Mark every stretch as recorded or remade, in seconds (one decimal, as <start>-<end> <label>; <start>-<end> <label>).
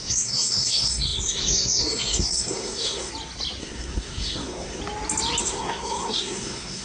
0.0-3.1 remade; 3.1-3.6 recorded; 3.6-4.8 remade; 4.8-5.4 recorded; 5.4-6.8 remade